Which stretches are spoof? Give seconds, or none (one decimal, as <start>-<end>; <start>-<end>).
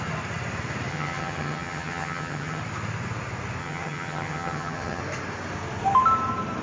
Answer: 0.9-2.6; 3.6-5.0